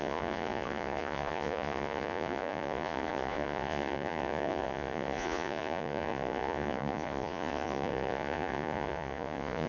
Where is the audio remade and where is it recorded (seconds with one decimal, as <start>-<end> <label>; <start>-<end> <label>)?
0.0-9.7 remade